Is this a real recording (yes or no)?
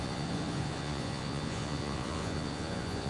no